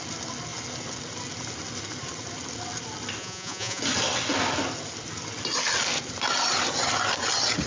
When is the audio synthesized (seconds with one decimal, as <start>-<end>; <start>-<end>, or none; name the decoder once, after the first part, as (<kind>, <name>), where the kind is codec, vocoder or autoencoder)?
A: 3.2-3.8 (vocoder, Vocos)